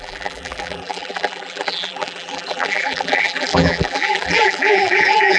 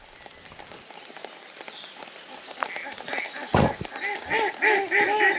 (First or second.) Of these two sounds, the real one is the second